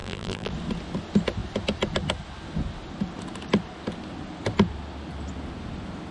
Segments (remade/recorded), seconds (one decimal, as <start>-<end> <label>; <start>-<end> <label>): 0.0-0.5 remade; 0.5-6.1 recorded

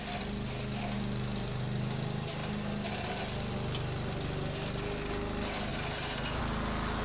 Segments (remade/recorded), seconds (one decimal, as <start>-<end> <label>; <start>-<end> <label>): 0.0-5.7 recorded; 5.7-6.4 remade; 6.4-7.0 recorded

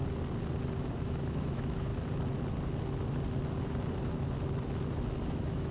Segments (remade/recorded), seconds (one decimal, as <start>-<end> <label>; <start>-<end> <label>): 0.0-1.0 recorded; 1.0-1.9 remade; 1.9-5.3 recorded; 5.3-5.7 remade

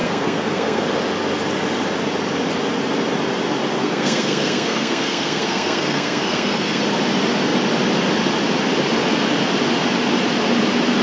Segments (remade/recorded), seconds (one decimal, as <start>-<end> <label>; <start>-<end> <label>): 0.0-0.8 remade; 0.8-3.8 recorded; 3.8-6.8 remade; 6.8-11.0 recorded

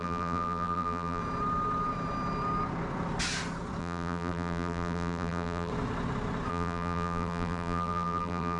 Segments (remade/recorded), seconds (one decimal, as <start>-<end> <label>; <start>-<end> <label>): 0.0-1.2 remade; 1.2-3.8 recorded; 3.8-5.7 remade; 5.7-6.5 recorded; 6.5-8.6 remade

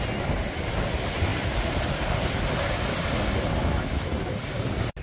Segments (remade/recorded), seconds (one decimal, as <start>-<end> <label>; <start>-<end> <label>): 0.0-5.0 recorded

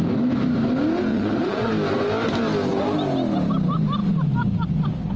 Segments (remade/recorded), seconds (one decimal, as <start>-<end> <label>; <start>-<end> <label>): 0.0-1.1 recorded; 1.1-1.7 remade; 1.7-5.2 recorded

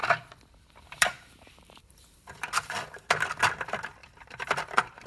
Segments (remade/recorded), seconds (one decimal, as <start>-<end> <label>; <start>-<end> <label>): 0.0-3.1 remade; 3.1-4.0 recorded; 4.0-5.1 remade